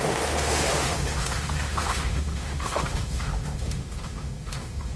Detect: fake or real fake